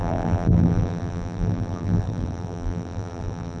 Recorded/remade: remade